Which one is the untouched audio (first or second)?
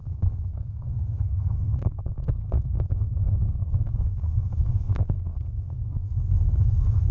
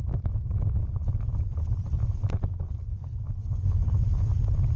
second